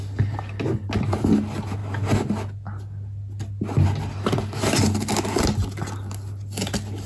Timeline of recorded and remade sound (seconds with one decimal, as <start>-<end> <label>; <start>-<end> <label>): 0.0-7.1 recorded